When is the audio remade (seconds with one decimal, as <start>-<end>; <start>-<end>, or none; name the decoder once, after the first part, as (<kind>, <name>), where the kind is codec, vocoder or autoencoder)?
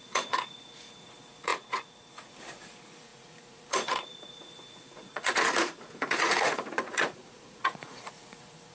0.0-8.7 (vocoder, Vocos)